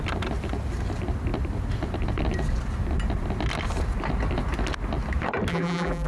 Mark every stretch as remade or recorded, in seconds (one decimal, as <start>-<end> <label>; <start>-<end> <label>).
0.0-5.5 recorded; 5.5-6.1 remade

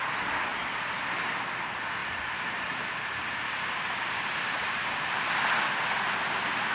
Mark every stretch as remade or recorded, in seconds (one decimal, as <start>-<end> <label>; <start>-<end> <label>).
0.0-0.5 recorded; 0.5-1.2 remade; 1.2-2.0 recorded; 2.0-5.6 remade; 5.6-6.7 recorded

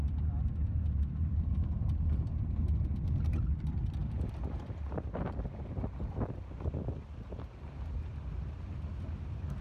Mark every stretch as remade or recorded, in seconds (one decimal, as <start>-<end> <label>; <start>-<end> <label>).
0.0-0.6 recorded; 0.6-1.6 remade; 1.6-9.6 recorded

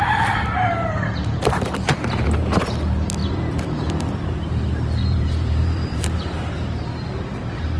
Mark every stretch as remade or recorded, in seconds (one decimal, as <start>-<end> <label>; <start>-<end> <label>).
0.0-1.3 recorded; 1.3-2.6 remade; 2.6-3.2 recorded; 3.2-3.9 remade; 3.9-5.0 recorded; 5.0-7.1 remade; 7.1-7.8 recorded